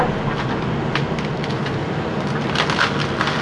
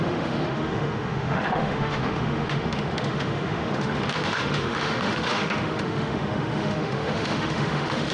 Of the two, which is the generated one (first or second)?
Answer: second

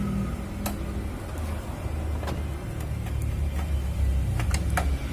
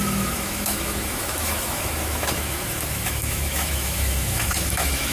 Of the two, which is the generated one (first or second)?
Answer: second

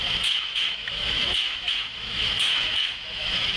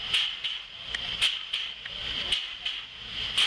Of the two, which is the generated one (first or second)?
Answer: first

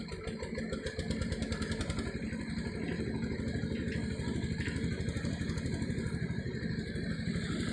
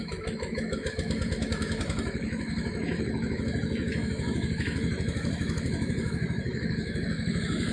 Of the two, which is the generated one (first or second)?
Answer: second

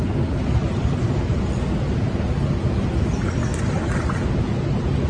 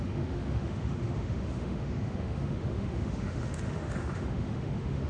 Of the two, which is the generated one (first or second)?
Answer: second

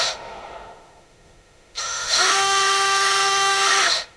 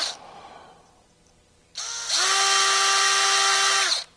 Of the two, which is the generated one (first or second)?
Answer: first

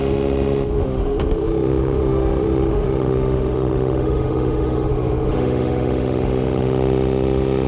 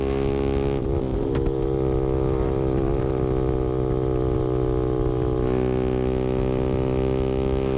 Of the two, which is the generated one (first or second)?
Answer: first